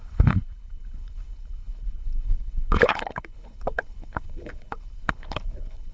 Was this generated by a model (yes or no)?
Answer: yes